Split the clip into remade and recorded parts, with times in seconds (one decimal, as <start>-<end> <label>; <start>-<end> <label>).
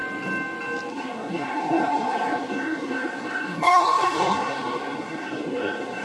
0.0-0.9 recorded; 0.9-6.0 remade